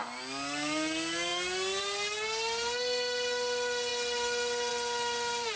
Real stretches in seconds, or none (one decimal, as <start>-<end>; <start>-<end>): 0.0-5.6